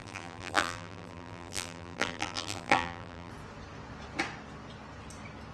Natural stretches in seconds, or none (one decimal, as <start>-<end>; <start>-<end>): 3.3-5.5